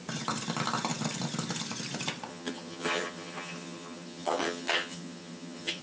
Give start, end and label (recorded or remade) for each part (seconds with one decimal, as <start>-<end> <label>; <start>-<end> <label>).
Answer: 0.0-2.3 recorded; 2.3-5.8 remade